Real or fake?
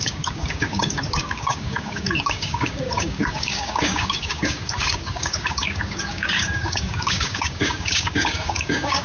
fake